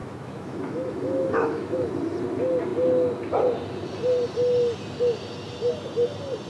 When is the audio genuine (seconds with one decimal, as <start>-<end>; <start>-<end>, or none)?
1.9-6.5